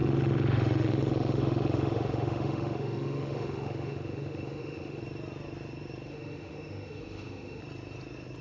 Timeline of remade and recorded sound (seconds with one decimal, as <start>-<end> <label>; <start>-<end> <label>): 0.0-5.0 remade; 5.0-6.1 recorded; 6.1-7.6 remade; 7.6-8.4 recorded